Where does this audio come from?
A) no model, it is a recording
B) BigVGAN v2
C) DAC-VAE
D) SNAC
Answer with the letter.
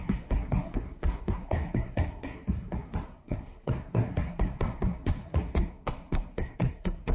D